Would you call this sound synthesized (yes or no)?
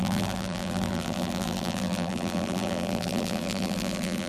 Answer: yes